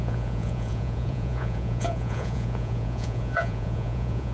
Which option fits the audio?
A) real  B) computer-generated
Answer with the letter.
B